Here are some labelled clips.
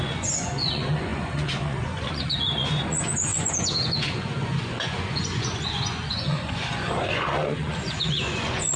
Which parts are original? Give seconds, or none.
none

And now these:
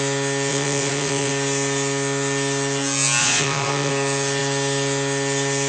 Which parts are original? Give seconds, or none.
0.0-0.5; 1.3-3.2; 3.9-5.7

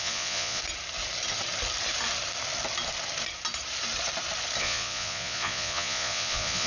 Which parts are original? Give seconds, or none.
0.6-4.6

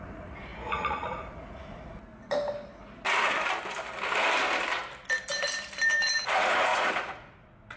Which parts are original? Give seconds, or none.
2.1-6.3

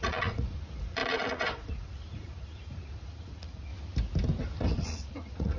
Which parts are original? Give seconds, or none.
3.7-4.6

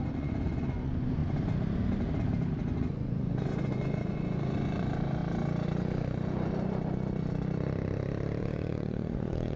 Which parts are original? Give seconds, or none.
1.2-2.8; 5.2-8.4

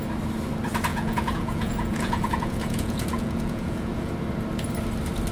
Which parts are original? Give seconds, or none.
0.0-0.9; 4.1-5.3

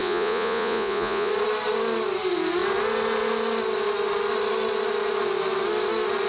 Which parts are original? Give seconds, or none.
1.3-6.3